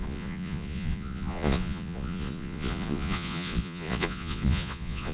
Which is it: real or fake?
fake